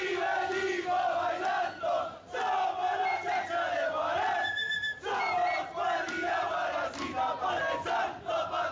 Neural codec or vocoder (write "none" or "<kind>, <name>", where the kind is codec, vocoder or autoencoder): none